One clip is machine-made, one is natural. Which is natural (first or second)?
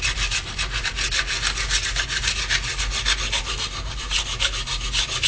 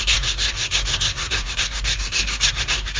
first